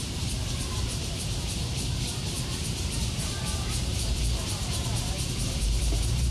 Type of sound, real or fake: fake